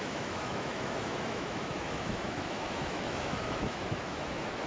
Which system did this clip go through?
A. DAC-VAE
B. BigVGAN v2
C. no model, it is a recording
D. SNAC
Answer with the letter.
A